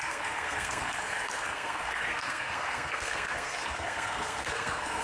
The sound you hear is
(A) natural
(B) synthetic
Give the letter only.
B